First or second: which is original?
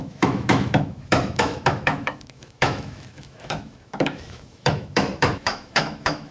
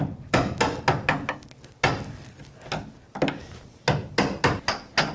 second